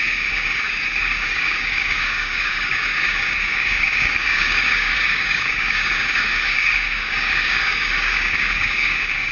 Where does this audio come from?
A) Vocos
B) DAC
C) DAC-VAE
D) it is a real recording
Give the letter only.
B